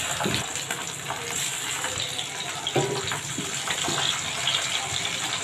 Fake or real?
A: real